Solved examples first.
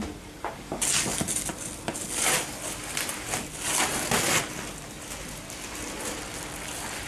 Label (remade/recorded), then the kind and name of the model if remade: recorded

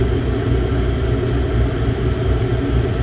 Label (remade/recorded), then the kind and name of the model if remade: recorded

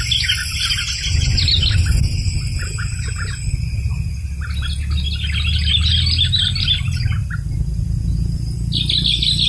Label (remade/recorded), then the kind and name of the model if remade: recorded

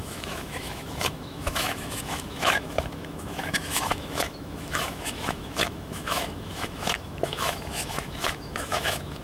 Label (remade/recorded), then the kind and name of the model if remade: remade, autoencoder, DAC-VAE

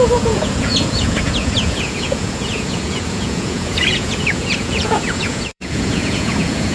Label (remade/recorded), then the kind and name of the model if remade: remade, vocoder, Vocos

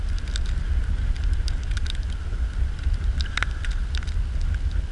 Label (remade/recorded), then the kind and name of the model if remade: recorded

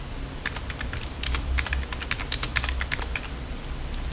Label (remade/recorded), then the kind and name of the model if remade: recorded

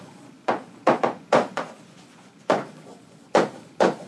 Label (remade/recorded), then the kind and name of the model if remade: remade, vocoder, Vocos